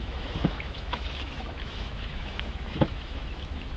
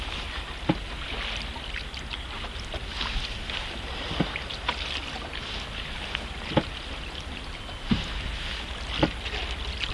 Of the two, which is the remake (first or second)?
first